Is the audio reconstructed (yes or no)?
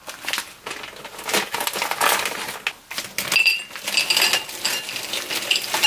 no